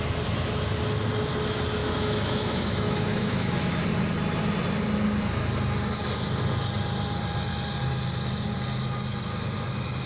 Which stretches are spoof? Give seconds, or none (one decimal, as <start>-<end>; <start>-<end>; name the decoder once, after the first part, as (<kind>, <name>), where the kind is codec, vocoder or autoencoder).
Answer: 1.8-3.5 (autoencoder, DAC-VAE)